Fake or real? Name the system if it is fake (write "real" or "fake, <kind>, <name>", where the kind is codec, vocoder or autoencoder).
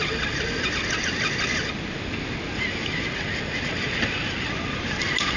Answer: real